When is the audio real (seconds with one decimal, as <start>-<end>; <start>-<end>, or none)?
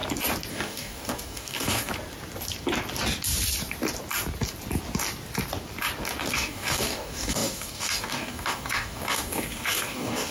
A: 0.0-0.5; 1.9-6.3